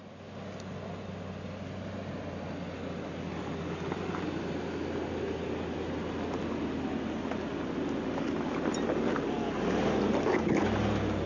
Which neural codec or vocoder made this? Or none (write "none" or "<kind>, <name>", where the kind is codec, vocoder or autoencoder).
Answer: none